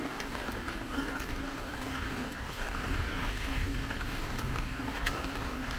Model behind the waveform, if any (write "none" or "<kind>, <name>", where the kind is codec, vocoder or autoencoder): codec, DAC